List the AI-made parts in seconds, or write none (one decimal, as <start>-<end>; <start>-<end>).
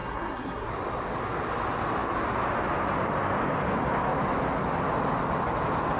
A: 0.0-0.7